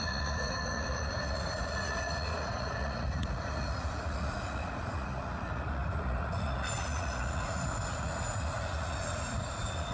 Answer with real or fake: fake